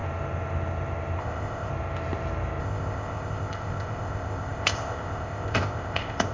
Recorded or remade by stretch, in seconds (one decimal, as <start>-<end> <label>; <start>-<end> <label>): 0.0-1.2 recorded; 1.2-1.7 remade; 1.7-2.6 recorded; 2.6-6.3 remade